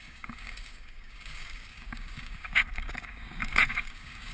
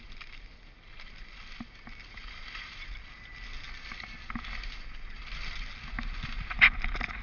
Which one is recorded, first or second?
second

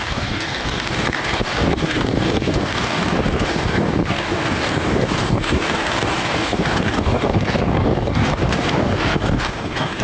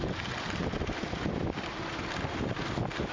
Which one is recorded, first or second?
second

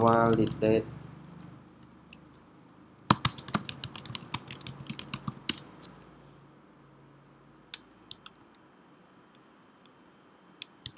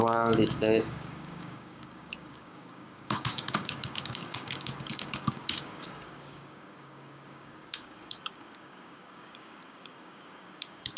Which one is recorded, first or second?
first